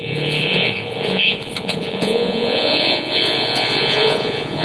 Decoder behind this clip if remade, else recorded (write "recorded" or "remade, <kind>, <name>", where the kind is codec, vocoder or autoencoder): remade, vocoder, Vocos